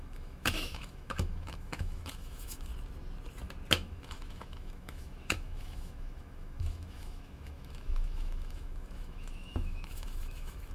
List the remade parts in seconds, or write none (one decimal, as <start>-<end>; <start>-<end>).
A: 0.0-2.7; 3.7-10.7